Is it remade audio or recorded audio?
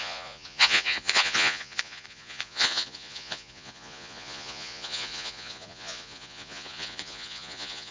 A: remade